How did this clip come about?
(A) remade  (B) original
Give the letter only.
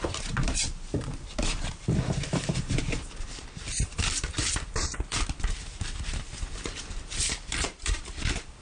A